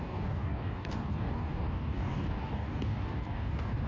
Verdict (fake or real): fake